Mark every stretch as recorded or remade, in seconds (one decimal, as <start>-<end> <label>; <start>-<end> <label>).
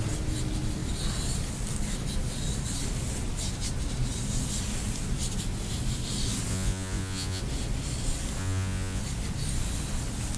0.0-6.5 recorded; 6.5-7.4 remade; 7.4-8.4 recorded; 8.4-9.0 remade; 9.0-10.4 recorded